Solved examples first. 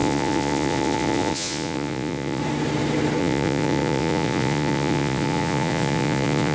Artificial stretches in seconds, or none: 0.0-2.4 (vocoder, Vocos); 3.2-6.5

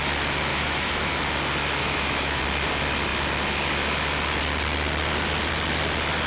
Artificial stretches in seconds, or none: 0.5-1.2 (autoencoder, DAC-VAE); 1.8-2.4

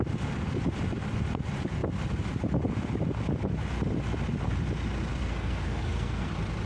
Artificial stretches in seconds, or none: 5.1-6.3 (codec, SNAC)